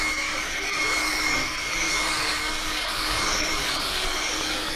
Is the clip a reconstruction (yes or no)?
yes